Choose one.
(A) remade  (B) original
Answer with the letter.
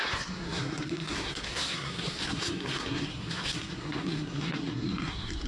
A